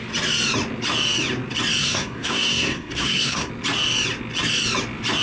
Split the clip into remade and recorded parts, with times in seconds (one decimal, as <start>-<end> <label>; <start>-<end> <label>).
0.0-1.8 recorded; 1.8-3.5 remade; 3.5-5.2 recorded